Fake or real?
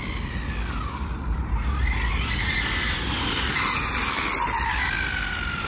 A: real